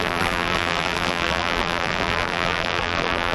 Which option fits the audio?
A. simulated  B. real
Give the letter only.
A